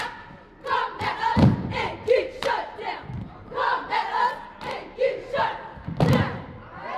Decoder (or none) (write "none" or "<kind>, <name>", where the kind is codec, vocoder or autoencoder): none